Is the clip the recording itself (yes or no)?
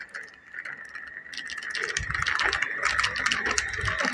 yes